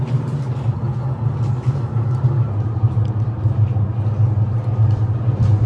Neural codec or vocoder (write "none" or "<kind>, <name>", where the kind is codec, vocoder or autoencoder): none